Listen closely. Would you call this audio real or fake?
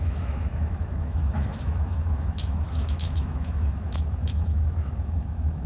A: fake